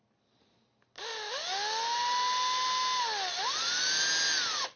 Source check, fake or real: real